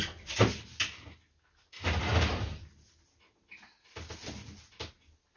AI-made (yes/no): no